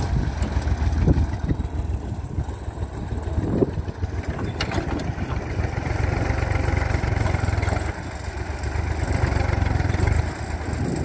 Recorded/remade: recorded